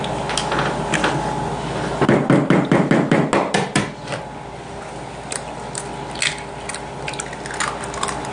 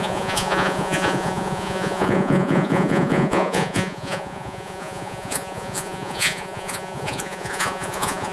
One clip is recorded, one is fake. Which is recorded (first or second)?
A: first